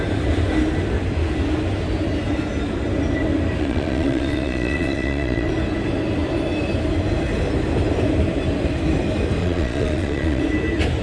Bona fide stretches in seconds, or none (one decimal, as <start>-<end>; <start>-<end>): 0.0-3.6; 5.5-9.4; 10.4-11.0